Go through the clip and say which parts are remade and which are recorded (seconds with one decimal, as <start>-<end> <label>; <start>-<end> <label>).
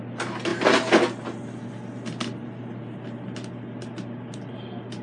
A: 0.0-5.0 recorded